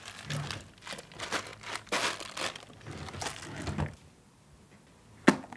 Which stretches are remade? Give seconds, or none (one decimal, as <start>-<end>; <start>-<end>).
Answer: none